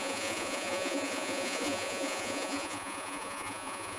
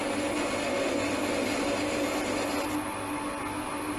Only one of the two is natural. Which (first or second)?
second